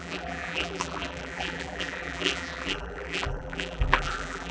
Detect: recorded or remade remade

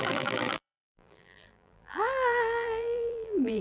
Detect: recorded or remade remade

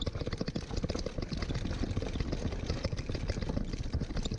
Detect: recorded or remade recorded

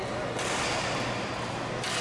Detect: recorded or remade recorded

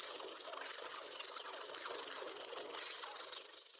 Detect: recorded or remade recorded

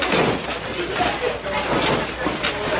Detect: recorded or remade recorded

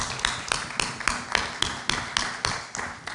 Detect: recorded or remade recorded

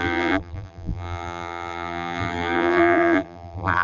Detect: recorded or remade remade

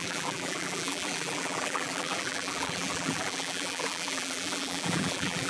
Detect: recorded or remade remade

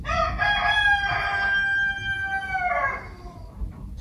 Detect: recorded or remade recorded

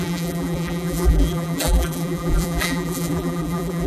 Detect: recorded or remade remade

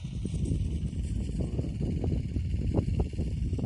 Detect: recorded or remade recorded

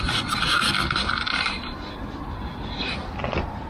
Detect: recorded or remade recorded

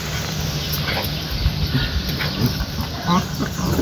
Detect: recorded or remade recorded